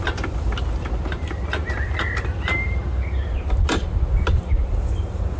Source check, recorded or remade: recorded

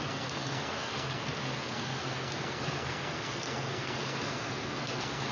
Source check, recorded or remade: remade